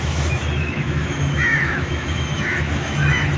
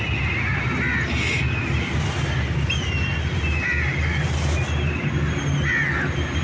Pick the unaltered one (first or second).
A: second